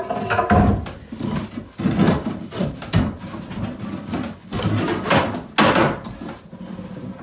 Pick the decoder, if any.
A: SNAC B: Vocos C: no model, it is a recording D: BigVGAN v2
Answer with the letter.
C